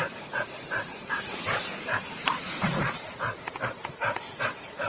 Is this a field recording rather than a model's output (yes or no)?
no